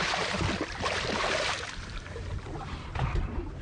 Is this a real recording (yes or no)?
yes